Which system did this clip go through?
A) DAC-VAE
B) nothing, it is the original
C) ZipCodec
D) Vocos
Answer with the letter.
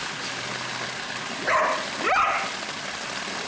B